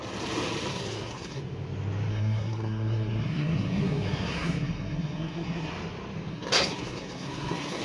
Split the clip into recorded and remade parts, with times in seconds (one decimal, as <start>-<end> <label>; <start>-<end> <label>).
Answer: 0.0-0.7 recorded; 0.7-1.4 remade; 1.4-2.1 recorded; 2.1-5.7 remade; 5.7-6.3 recorded; 6.3-7.8 remade